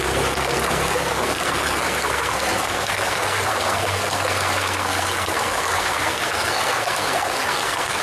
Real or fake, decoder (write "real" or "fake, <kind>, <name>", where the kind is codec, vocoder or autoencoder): fake, codec, SNAC